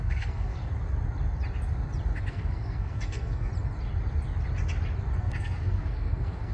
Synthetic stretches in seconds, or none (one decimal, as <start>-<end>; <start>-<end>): 0.0-0.7; 2.3-3.5; 5.2-6.5